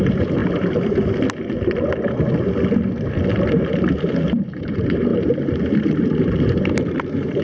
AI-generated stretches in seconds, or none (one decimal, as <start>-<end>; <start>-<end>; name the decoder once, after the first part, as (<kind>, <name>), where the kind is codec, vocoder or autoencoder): 0.0-0.4 (vocoder, BigVGAN v2); 3.6-7.4